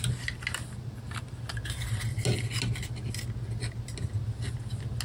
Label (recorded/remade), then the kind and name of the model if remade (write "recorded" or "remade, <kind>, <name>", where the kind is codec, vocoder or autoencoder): recorded